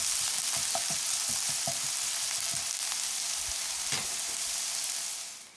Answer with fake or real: real